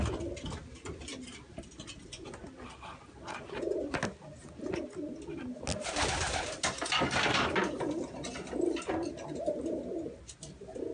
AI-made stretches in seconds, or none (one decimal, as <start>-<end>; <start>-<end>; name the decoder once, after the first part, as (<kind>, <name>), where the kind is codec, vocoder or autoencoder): 1.1-1.6 (vocoder, BigVGAN v2)